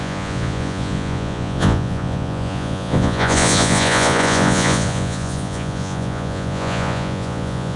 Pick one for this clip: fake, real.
fake